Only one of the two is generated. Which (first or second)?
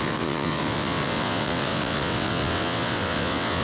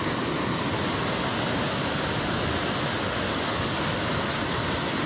first